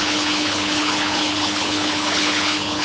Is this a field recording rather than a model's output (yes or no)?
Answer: no